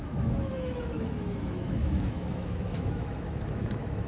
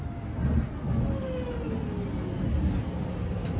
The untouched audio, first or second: second